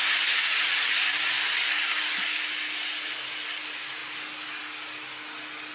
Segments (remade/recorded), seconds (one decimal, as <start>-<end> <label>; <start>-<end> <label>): 0.0-1.1 recorded; 1.1-2.4 remade; 2.4-5.7 recorded